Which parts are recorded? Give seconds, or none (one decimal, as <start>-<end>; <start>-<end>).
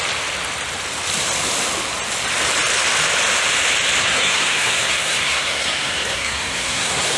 0.0-4.0